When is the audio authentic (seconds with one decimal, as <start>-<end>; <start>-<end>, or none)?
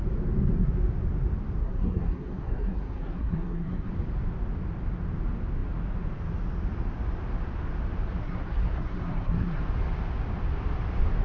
0.0-1.6; 3.9-8.2; 9.6-11.2